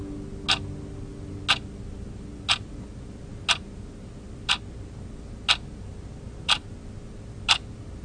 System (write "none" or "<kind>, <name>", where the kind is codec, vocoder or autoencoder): none